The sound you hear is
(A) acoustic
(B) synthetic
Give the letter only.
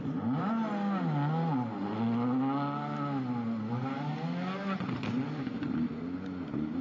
A